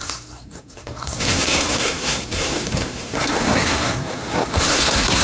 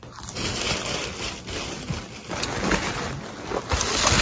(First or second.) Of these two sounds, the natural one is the second